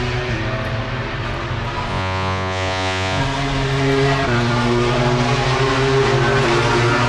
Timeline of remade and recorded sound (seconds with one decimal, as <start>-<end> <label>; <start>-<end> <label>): 0.0-1.9 recorded; 1.9-3.2 remade; 3.2-7.1 recorded